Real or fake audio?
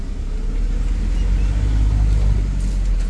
real